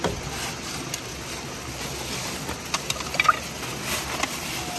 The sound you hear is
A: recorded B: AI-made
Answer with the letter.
A